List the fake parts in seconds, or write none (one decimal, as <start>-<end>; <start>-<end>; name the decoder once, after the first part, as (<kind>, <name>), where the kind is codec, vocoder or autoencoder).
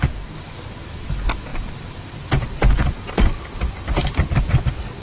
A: 1.5-4.5 (vocoder, BigVGAN v2)